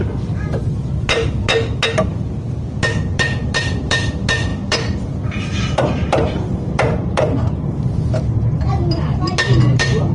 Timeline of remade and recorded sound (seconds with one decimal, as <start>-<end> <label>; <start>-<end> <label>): 0.0-0.6 remade; 0.6-2.1 recorded; 2.1-10.1 remade